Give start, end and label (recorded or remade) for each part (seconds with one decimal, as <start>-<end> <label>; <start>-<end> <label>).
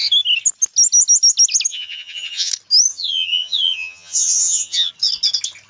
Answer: 0.0-1.7 recorded; 1.7-2.5 remade; 2.5-2.9 recorded; 2.9-4.9 remade; 4.9-5.7 recorded